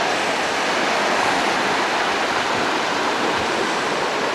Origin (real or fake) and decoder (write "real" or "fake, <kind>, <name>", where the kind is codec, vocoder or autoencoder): real